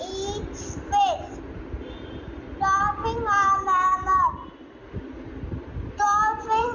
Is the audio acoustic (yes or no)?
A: yes